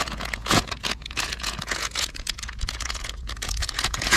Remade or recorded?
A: remade